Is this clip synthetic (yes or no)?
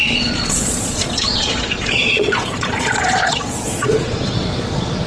yes